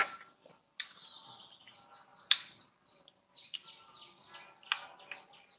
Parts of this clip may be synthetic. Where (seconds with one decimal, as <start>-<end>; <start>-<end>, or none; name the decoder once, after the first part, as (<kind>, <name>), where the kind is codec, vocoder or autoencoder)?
none